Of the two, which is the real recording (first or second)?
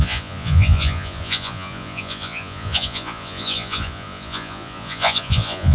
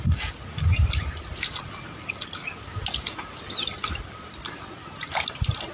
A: second